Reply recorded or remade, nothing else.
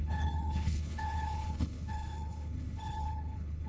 remade